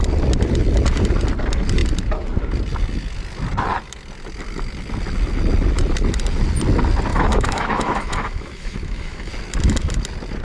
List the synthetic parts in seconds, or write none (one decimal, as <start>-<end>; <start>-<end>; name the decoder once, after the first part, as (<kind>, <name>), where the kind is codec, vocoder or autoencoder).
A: 7.1-9.3 (autoencoder, DAC-VAE)